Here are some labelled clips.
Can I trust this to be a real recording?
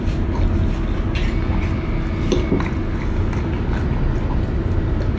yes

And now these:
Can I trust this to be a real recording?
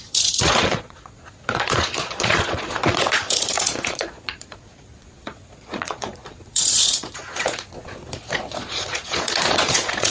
no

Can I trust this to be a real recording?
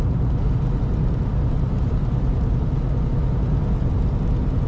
yes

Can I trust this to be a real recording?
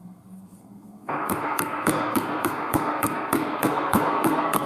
no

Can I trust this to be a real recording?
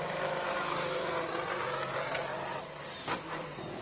yes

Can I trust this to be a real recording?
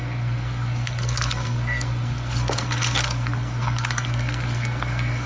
no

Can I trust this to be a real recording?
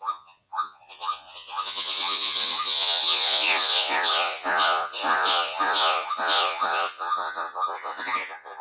no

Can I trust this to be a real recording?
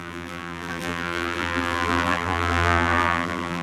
no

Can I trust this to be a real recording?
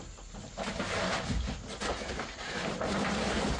yes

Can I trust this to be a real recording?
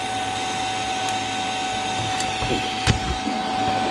yes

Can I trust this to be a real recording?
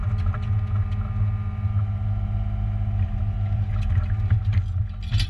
yes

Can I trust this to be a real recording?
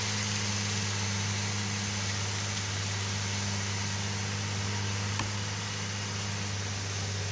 yes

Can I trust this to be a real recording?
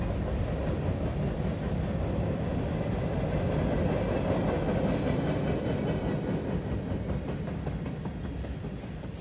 yes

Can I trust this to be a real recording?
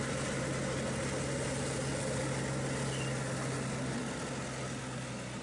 yes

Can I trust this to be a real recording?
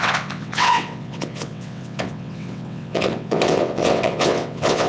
no